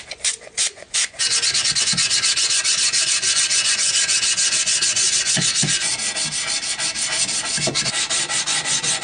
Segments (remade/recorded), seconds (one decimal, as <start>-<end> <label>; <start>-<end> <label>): 0.0-5.9 remade; 5.9-8.4 recorded; 8.4-9.0 remade